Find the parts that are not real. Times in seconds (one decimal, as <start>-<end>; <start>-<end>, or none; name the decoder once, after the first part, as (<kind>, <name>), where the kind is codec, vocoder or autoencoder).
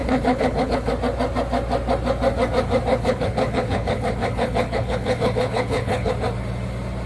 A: 0.0-0.9 (codec, HILCodec); 2.9-6.1